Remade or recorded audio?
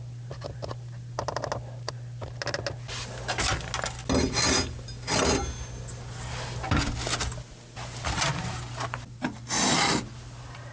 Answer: recorded